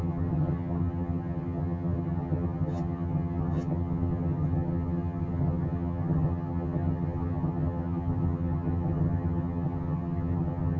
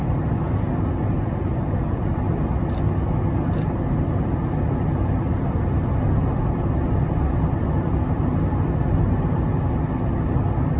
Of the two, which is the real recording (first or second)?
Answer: second